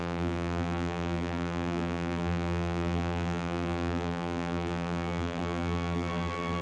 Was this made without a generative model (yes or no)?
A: no